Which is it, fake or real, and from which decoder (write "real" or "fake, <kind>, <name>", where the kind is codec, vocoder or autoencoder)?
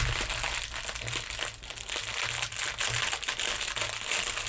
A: real